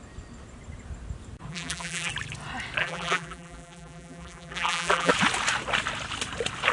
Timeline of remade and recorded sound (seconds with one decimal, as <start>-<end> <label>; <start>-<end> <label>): 0.0-1.5 recorded; 1.5-2.1 remade; 2.1-2.8 recorded; 2.8-5.1 remade; 5.1-6.7 recorded